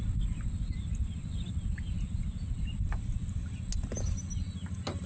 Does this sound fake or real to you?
real